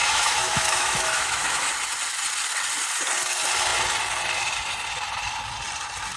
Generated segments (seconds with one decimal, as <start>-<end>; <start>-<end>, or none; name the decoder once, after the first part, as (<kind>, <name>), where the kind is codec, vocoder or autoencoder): 0.0-1.7 (autoencoder, DAC-VAE)